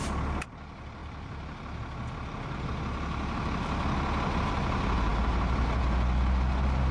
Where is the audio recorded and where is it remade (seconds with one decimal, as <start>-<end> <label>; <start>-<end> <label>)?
0.0-6.9 recorded